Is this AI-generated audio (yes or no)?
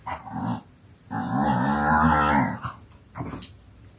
no